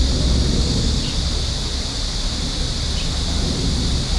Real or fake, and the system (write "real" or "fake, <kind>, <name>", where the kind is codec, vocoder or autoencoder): real